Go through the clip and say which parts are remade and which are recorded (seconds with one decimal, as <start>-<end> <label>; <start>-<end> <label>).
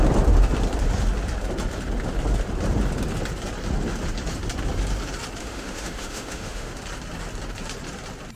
0.0-5.4 recorded; 5.4-6.7 remade; 6.7-8.4 recorded